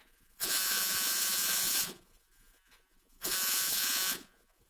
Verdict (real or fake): fake